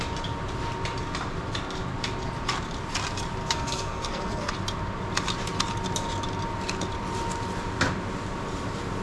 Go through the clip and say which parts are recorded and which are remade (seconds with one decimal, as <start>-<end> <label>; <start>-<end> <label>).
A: 0.0-3.4 recorded; 3.4-4.5 remade; 4.5-9.0 recorded